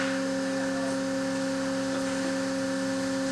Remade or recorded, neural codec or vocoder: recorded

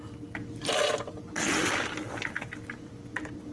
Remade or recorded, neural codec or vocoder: recorded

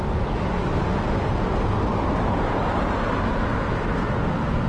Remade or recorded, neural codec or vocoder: recorded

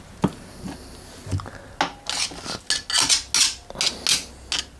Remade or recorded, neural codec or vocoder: recorded